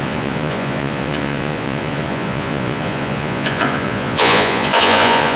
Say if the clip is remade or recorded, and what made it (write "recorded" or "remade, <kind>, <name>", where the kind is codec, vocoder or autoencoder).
remade, vocoder, Vocos